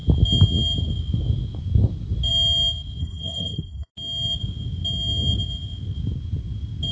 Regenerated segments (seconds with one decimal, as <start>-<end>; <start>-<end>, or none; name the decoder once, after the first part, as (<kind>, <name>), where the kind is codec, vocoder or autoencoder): 3.0-3.9 (codec, SNAC)